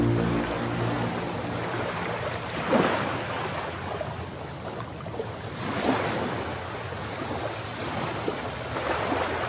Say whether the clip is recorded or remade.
recorded